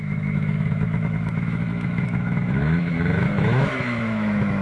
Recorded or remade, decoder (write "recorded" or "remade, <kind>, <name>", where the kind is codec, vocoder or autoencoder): remade, autoencoder, DAC-VAE